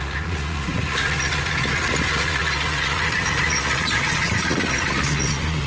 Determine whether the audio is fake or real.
fake